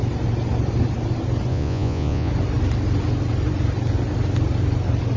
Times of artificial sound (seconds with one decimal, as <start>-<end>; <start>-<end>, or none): 1.5-2.3